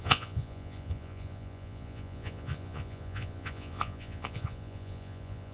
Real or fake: fake